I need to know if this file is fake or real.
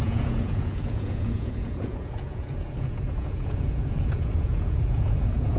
fake